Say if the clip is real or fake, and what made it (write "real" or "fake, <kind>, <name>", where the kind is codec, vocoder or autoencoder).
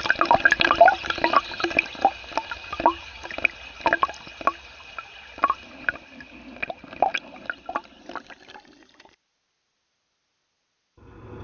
real